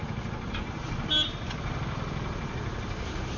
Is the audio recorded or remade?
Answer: recorded